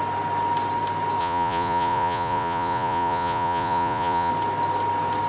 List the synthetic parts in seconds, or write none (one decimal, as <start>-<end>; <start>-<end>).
1.2-4.3